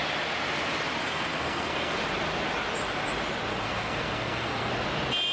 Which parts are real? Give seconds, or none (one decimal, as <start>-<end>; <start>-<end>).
0.0-1.0; 2.0-3.5; 4.7-5.3